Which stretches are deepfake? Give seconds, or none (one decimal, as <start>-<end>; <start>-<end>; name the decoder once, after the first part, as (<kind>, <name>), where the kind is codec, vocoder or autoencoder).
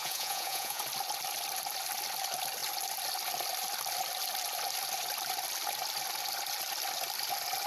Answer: 0.0-0.8 (vocoder, Vocos)